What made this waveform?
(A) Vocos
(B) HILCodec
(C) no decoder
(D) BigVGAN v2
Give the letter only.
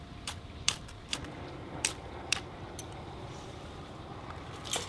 D